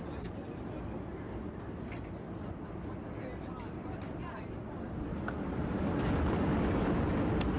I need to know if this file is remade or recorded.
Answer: recorded